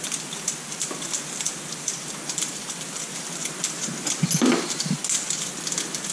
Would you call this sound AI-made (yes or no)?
no